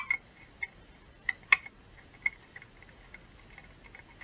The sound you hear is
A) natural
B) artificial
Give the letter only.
A